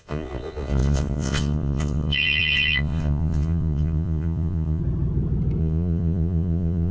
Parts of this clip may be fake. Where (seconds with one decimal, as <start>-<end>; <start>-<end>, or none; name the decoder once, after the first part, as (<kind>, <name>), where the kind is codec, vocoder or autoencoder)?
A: 0.0-4.8 (vocoder, Vocos); 5.6-6.9